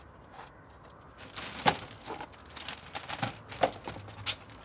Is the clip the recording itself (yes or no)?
yes